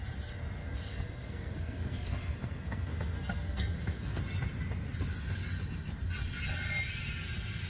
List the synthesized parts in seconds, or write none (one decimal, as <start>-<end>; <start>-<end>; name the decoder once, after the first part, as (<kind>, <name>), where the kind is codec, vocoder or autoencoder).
0.6-4.2 (codec, SNAC)

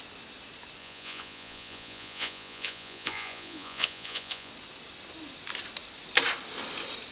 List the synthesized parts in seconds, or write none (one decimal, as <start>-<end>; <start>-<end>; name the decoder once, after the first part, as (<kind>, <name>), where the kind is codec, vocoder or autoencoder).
0.8-4.5 (vocoder, Vocos)

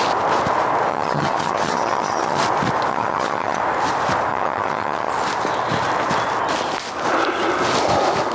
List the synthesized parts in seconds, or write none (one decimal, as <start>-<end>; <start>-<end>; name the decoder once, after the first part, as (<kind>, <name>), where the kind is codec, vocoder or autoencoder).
0.9-2.4 (vocoder, HiFi-GAN); 2.9-3.6; 4.3-5.1

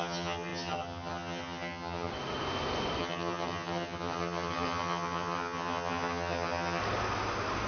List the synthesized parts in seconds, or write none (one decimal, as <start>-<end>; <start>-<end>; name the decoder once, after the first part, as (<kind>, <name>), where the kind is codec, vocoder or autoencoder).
0.0-2.1 (vocoder, HiFi-GAN); 3.0-6.8

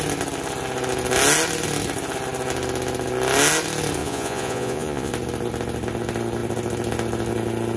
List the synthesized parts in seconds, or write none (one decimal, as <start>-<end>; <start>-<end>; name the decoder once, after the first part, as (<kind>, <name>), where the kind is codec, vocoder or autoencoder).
4.0-5.1 (vocoder, Vocos)

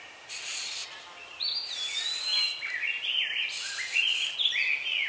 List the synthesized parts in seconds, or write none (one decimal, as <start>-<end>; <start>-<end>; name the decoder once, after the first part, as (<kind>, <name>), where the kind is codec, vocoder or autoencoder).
none

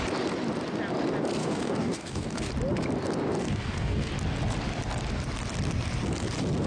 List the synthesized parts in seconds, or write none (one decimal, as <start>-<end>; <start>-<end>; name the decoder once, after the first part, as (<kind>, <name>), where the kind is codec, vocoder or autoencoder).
1.4-2.5 (codec, DAC); 3.4-4.1